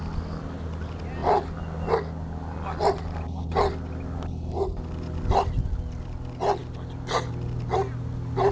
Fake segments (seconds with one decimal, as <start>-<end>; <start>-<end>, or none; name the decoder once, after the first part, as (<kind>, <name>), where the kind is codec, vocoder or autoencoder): none